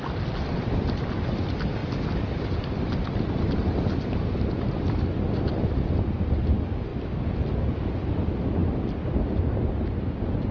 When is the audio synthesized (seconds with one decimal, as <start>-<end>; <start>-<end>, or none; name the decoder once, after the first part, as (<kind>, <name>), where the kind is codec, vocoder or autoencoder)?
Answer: none